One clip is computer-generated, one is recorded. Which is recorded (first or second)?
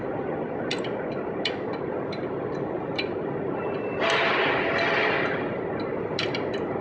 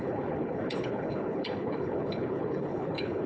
first